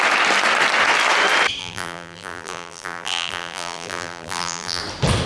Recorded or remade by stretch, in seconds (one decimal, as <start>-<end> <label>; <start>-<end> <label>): 0.0-1.6 recorded; 1.6-4.8 remade; 4.8-5.3 recorded